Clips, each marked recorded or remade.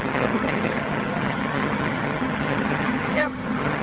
remade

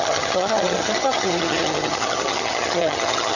remade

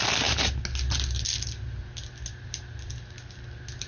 recorded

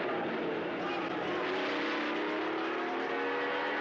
recorded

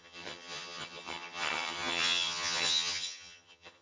remade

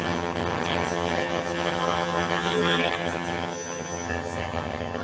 remade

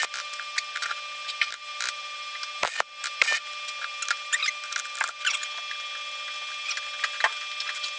recorded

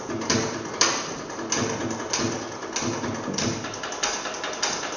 recorded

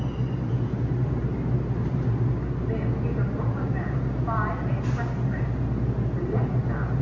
recorded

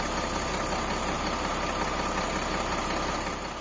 recorded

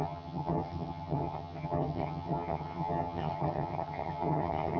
remade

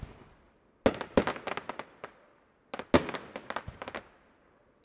recorded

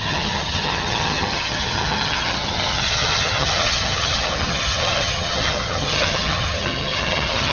remade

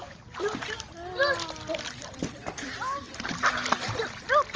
recorded